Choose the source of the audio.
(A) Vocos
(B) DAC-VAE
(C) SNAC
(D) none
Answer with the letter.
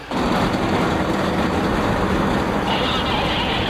D